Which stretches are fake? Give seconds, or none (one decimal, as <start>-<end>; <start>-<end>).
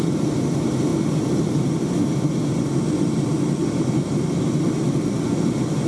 none